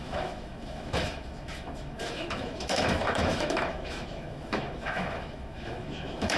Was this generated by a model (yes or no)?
yes